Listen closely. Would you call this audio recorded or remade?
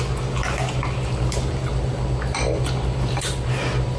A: recorded